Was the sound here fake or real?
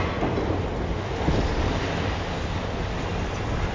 real